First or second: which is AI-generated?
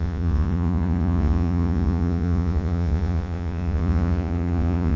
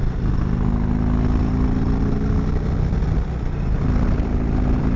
first